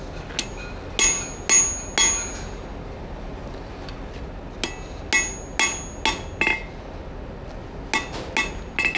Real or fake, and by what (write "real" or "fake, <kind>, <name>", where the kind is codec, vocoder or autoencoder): real